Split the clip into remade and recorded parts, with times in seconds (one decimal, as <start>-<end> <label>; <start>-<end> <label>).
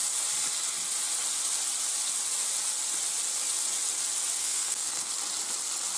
0.0-4.4 recorded; 4.4-5.1 remade; 5.1-6.0 recorded